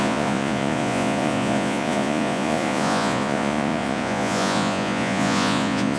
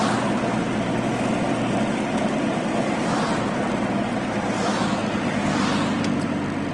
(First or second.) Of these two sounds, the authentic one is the second